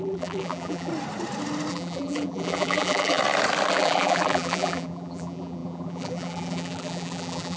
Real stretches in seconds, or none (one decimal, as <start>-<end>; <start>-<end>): 0.9-1.7; 3.2-3.7